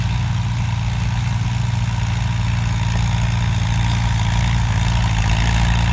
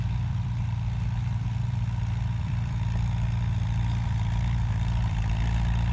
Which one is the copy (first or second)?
second